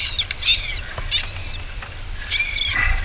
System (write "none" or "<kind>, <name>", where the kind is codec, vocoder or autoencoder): none